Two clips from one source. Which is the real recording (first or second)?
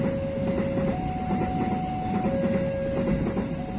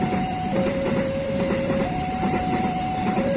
first